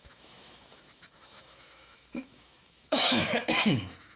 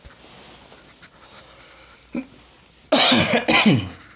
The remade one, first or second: first